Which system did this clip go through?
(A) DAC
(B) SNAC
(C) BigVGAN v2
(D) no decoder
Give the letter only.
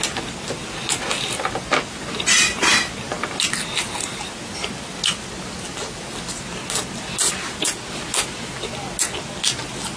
D